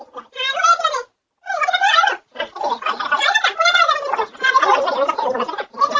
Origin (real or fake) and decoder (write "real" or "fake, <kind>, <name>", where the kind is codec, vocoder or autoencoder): real